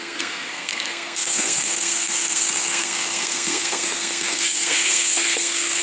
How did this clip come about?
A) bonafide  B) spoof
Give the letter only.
B